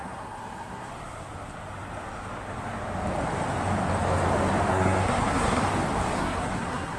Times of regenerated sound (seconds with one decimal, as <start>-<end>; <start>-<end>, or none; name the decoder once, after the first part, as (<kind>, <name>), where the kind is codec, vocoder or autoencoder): 0.0-0.9 (codec, SNAC); 4.7-5.6; 6.2-7.0